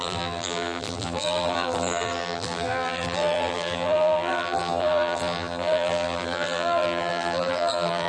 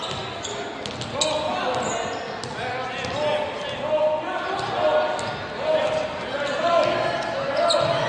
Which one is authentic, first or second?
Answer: second